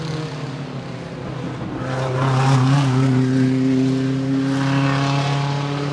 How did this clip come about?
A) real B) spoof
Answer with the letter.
A